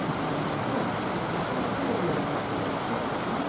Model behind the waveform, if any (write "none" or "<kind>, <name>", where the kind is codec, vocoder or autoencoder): none